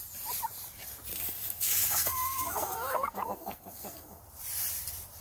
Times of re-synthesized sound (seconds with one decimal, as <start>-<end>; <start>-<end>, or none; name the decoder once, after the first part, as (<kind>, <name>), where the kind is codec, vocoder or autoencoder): 1.1-4.2 (codec, SNAC)